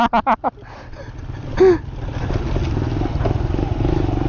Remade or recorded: recorded